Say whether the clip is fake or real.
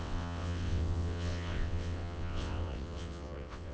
fake